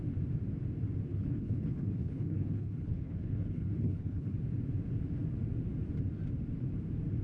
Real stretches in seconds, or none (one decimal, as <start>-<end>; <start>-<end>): 0.0-1.1; 4.4-7.2